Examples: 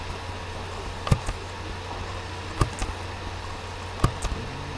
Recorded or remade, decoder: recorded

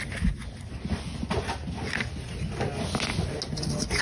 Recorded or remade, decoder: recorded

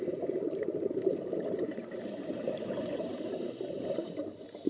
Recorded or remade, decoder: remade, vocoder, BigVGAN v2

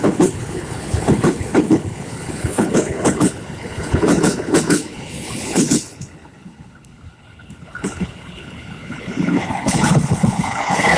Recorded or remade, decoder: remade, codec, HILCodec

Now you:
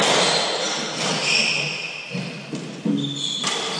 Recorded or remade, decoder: recorded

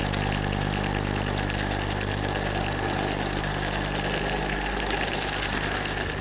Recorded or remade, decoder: recorded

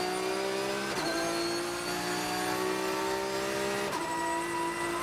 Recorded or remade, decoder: recorded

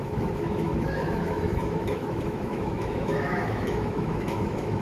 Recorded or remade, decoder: remade, autoencoder, DAC-VAE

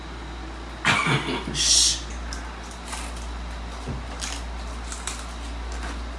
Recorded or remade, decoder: recorded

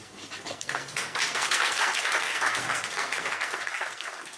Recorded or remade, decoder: remade, codec, SNAC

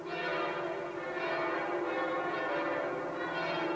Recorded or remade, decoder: recorded